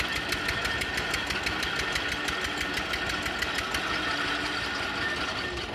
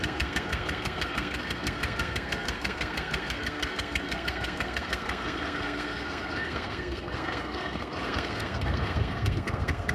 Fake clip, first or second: second